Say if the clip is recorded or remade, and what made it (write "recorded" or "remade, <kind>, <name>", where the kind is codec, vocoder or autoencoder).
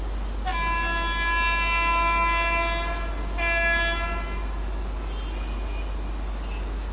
recorded